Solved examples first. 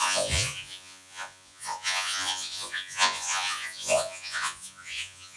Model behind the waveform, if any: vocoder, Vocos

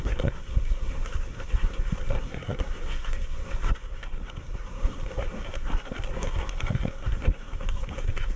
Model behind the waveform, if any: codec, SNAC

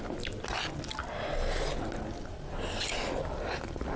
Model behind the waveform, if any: none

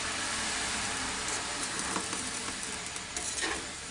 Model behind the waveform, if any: vocoder, BigVGAN v2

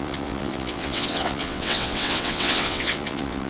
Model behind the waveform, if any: vocoder, WaveNeXt